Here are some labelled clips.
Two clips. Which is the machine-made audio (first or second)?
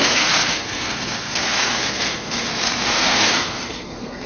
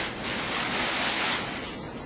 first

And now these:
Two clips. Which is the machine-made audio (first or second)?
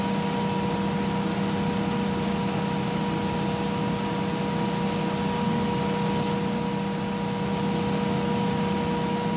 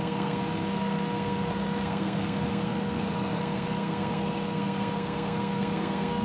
second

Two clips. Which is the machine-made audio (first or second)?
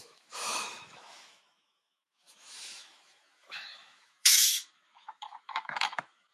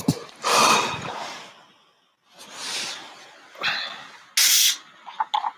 first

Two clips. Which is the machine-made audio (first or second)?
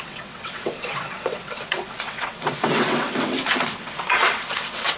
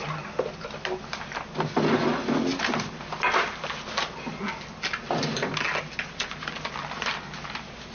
first